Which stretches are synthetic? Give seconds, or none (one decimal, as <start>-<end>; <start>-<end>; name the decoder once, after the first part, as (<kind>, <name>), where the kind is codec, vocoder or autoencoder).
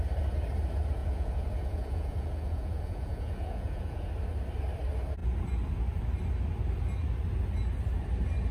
1.0-4.1 (vocoder, Vocos)